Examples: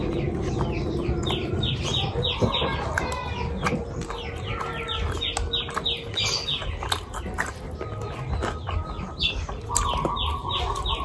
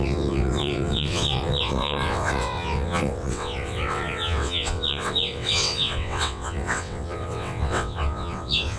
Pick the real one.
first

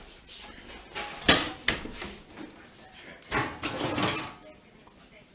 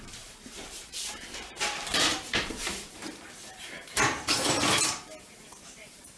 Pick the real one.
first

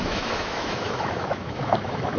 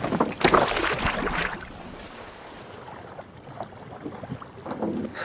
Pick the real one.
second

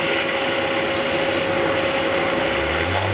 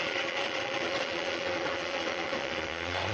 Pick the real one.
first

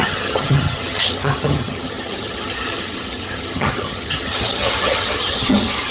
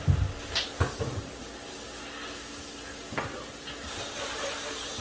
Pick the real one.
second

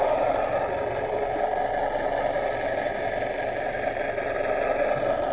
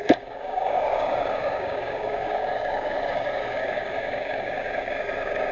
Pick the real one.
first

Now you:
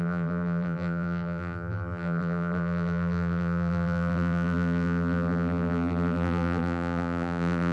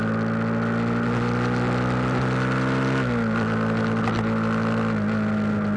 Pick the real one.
second